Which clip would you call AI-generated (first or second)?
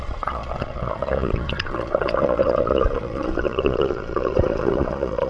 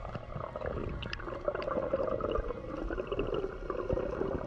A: first